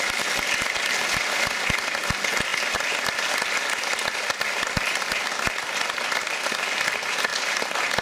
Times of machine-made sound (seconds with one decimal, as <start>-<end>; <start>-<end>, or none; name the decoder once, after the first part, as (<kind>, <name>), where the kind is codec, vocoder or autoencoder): none